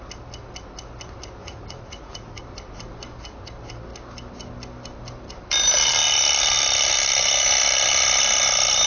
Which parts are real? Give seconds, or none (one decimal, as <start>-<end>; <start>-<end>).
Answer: 0.0-1.4; 2.4-8.9